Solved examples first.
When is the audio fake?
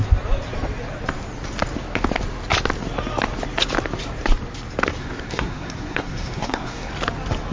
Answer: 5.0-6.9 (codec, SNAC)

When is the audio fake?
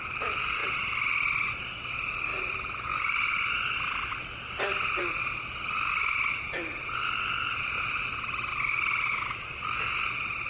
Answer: none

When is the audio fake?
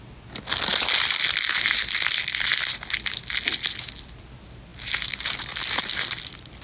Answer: none